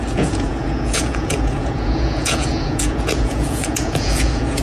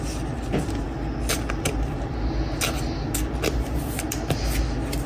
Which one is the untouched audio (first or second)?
second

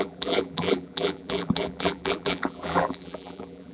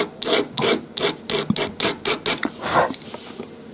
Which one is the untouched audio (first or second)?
second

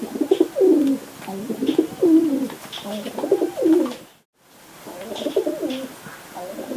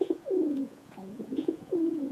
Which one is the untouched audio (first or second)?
first